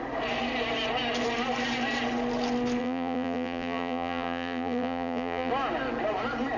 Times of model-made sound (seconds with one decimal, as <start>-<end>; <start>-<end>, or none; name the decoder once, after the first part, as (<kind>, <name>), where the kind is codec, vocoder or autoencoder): 2.8-5.5 (vocoder, BigVGAN v2)